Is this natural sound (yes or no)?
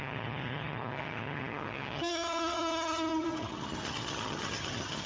no